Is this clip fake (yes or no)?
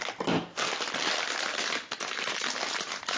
no